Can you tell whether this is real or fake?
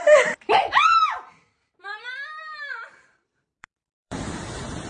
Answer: fake